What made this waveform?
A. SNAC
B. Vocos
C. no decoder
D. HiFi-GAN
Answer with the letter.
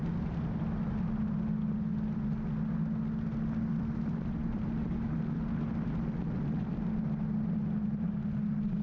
C